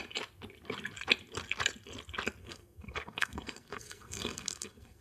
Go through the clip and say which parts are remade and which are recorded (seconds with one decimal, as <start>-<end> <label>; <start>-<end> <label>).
0.0-2.4 recorded; 2.4-5.0 remade